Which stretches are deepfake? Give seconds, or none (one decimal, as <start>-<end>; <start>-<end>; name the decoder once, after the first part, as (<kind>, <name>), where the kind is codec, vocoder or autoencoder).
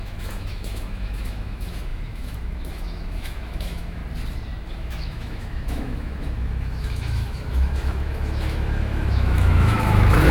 0.0-4.0 (autoencoder, DAC-VAE); 4.7-10.3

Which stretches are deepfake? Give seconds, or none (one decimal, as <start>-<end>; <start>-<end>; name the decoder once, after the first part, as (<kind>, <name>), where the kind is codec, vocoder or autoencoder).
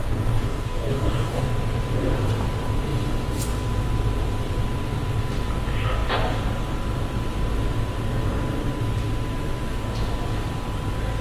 0.0-1.4 (codec, DAC)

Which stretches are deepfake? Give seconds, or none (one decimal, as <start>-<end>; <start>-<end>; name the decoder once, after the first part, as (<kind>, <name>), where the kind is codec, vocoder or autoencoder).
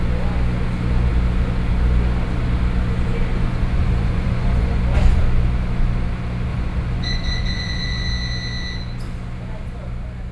3.3-4.8 (vocoder, Vocos); 6.5-8.1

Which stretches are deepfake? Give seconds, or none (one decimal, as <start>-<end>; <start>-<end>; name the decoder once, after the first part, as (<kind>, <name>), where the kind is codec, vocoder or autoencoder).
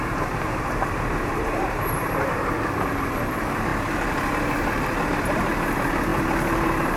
0.0-3.7 (vocoder, BigVGAN v2); 5.1-7.0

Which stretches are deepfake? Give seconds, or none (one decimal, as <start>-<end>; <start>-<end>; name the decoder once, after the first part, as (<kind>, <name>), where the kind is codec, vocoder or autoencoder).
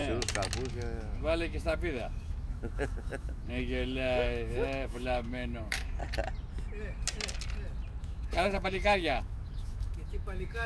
0.7-6.0 (autoencoder, DAC-VAE); 8.0-10.7